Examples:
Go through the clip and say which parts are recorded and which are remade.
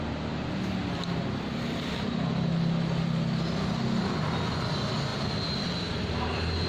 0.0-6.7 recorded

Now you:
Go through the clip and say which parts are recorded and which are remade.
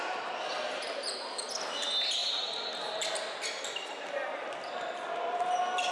0.0-5.9 recorded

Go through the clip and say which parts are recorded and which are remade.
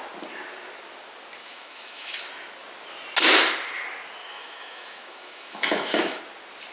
0.0-1.4 recorded; 1.4-2.2 remade; 2.2-4.2 recorded; 4.2-6.2 remade; 6.2-6.7 recorded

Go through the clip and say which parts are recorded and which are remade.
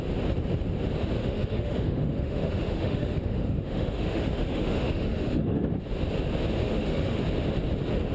0.0-1.2 recorded; 1.2-5.8 remade; 5.8-6.6 recorded; 6.6-7.2 remade; 7.2-8.1 recorded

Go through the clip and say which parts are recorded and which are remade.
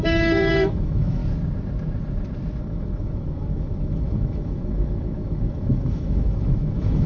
0.0-1.2 remade; 1.2-2.6 recorded; 2.6-7.1 remade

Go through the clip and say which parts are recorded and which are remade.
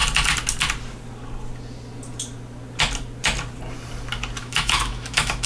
0.0-4.4 recorded; 4.4-5.5 remade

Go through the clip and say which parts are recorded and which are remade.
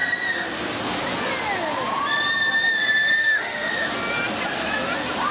0.0-3.2 recorded; 3.2-3.7 remade; 3.7-5.3 recorded